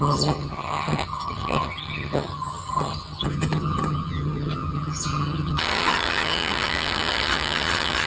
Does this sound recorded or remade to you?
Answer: remade